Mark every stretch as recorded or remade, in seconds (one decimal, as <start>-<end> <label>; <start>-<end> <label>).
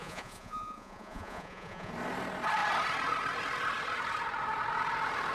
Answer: 0.0-1.9 remade; 1.9-5.3 recorded